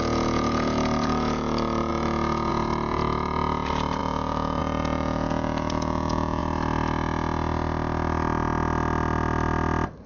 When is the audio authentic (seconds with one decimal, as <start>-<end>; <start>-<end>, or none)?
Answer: 6.4-10.1